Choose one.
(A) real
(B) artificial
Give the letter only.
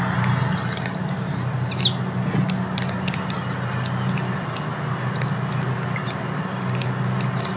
A